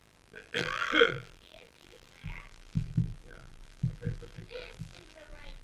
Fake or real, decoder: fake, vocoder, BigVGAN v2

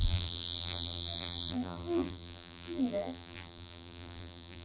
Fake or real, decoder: fake, vocoder, BigVGAN v2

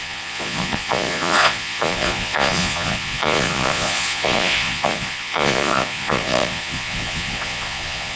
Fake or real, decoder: fake, vocoder, Vocos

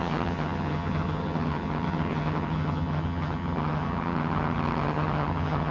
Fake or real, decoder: fake, vocoder, HiFi-GAN